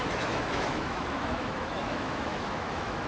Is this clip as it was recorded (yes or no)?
no